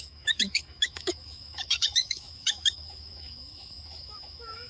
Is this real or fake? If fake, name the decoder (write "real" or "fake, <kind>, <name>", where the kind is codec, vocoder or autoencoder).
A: fake, autoencoder, DAC-VAE